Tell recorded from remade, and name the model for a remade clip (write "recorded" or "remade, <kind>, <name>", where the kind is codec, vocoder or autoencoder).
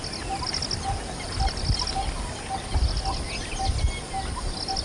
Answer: recorded